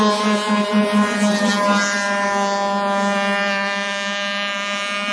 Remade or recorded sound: recorded